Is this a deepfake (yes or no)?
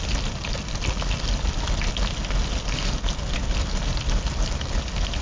no